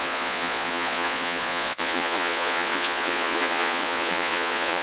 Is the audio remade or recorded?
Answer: remade